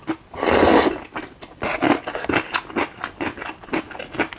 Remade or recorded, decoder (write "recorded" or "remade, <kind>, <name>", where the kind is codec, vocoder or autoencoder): recorded